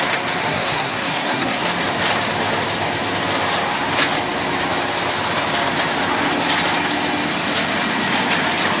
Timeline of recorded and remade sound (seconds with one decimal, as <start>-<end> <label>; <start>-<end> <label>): 0.0-0.4 recorded; 0.4-1.6 remade; 1.6-8.8 recorded